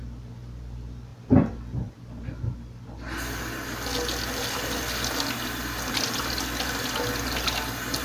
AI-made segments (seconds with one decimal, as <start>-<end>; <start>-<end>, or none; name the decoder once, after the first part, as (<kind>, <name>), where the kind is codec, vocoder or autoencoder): none